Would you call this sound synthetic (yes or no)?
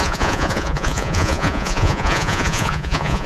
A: yes